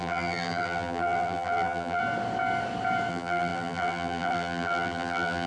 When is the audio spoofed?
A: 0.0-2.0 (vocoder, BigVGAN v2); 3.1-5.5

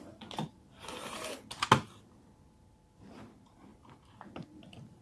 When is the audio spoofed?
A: none

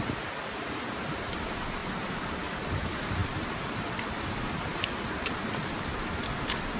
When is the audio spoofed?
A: none

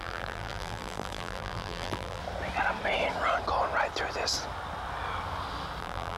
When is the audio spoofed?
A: 0.0-2.2 (vocoder, BigVGAN v2); 5.8-6.2

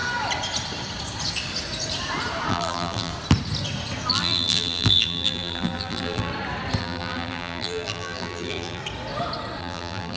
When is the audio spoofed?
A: 2.5-3.1 (vocoder, BigVGAN v2); 4.1-6.3; 6.8-8.8; 9.6-10.2

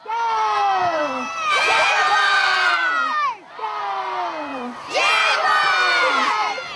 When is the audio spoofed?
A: 0.8-2.9 (vocoder, BigVGAN v2); 4.5-5.0